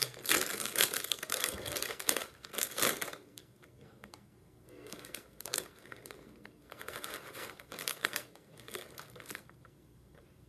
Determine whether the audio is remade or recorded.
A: remade